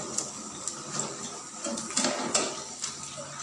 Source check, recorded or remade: recorded